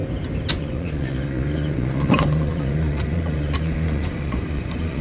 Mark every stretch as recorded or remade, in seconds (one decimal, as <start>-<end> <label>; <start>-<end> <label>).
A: 0.0-0.5 recorded; 0.5-5.0 remade